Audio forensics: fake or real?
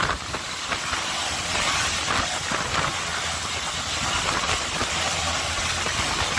real